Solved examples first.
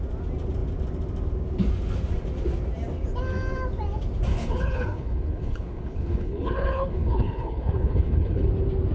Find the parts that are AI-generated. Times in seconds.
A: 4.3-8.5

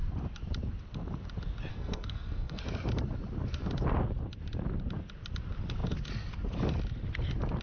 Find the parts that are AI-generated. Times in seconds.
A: 1.7-2.6